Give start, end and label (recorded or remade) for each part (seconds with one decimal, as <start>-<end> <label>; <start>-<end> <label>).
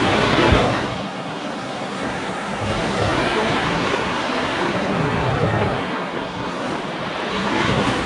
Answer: 0.0-6.7 remade; 6.7-7.3 recorded; 7.3-8.1 remade